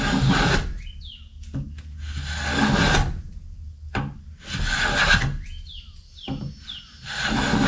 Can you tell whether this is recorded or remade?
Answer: recorded